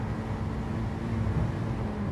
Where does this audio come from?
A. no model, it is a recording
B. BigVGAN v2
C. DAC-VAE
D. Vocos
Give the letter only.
A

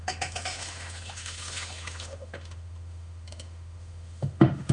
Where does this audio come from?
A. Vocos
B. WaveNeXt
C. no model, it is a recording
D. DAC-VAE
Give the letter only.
D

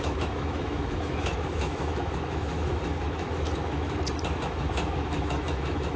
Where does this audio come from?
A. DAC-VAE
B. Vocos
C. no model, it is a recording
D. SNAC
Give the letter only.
A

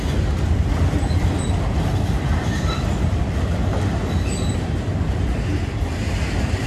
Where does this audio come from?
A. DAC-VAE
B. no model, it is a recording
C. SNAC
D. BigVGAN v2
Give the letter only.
B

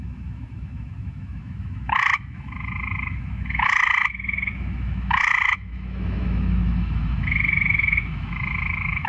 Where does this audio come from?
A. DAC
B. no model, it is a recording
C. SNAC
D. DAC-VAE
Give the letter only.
D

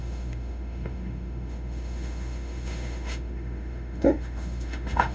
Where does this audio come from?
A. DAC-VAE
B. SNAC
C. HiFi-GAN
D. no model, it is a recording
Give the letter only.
A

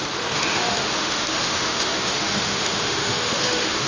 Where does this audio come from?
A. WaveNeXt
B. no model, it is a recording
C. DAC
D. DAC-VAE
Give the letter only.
D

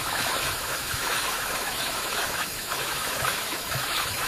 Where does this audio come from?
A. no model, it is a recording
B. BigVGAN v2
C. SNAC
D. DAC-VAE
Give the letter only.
D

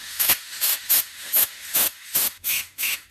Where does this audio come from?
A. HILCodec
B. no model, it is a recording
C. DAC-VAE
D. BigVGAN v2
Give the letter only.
C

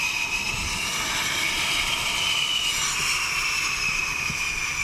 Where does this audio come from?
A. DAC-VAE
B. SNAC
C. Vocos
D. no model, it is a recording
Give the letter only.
D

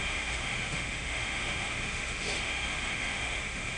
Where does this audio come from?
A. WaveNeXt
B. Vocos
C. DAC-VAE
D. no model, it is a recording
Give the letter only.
C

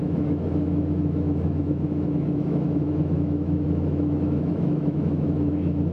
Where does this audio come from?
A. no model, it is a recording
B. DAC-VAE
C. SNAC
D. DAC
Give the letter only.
B